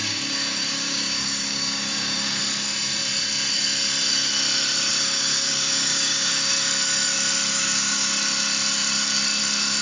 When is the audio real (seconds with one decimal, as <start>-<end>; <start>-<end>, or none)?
2.4-4.9; 6.5-7.5; 8.1-9.8